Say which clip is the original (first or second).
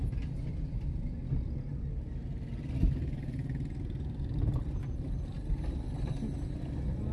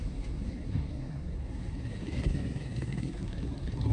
first